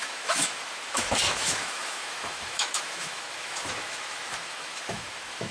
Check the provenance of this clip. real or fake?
fake